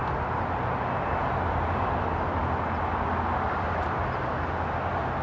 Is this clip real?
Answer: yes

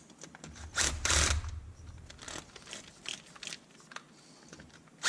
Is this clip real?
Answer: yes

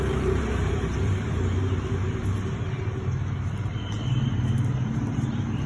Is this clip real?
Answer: no